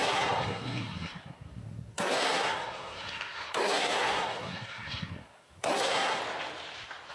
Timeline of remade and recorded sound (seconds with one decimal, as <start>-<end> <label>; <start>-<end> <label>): 0.0-6.2 remade; 6.2-7.1 recorded